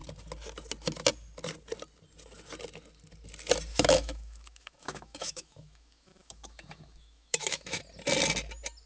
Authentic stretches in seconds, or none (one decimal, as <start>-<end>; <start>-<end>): 0.0-3.7; 7.8-8.9